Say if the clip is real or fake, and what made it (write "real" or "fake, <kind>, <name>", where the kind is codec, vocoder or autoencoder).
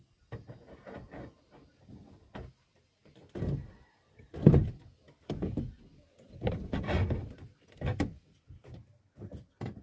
real